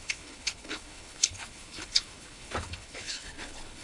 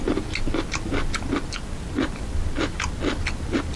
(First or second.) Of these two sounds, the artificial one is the first